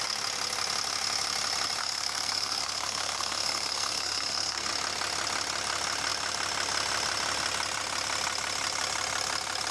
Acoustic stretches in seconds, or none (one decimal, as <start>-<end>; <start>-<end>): 0.0-1.8; 4.7-9.7